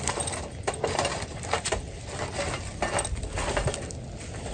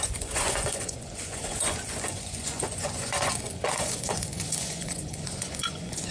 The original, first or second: first